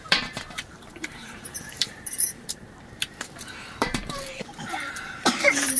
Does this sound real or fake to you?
fake